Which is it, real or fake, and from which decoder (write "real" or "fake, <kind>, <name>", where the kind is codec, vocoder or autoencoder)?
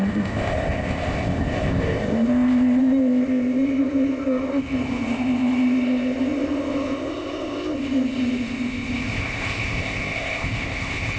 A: fake, codec, ZipCodec